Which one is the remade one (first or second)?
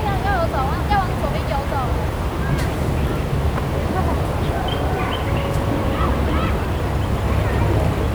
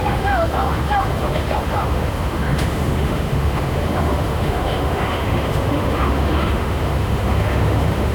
second